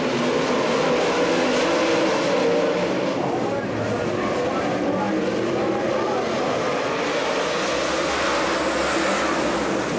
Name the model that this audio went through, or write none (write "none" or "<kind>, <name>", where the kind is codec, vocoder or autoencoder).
none